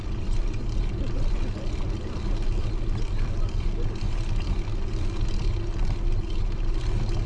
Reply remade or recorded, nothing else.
recorded